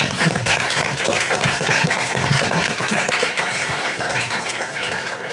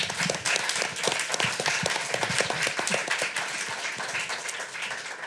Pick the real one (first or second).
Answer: second